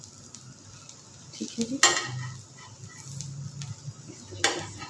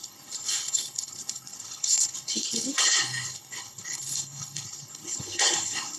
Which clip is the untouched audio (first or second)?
first